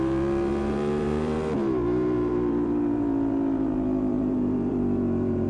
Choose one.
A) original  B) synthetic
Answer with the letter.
B